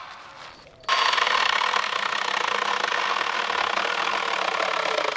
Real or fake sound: real